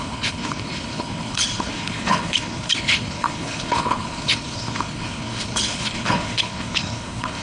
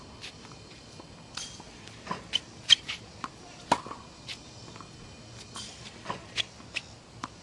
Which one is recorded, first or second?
second